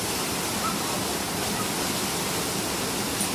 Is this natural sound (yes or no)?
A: yes